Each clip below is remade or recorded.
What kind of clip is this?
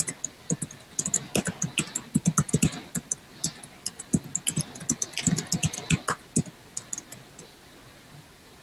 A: recorded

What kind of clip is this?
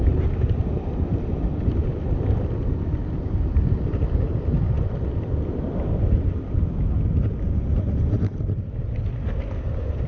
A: recorded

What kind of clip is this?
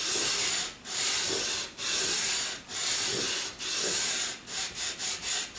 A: recorded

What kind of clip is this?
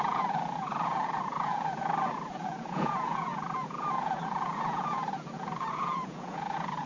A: remade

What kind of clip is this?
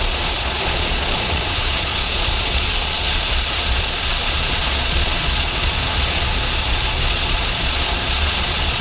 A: remade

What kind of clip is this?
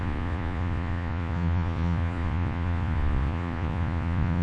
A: remade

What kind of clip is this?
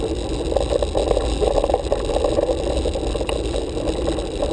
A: recorded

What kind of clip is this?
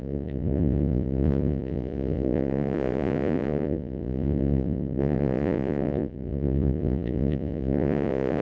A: remade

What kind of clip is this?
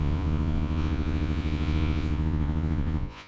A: remade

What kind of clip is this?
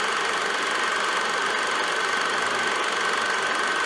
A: recorded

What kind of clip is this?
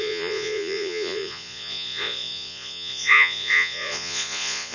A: remade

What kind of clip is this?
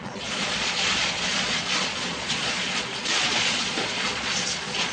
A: remade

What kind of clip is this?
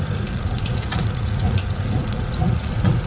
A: remade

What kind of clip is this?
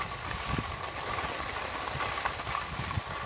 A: recorded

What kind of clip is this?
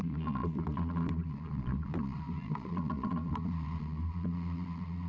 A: remade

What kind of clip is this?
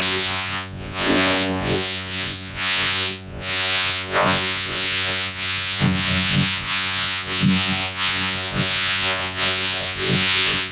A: remade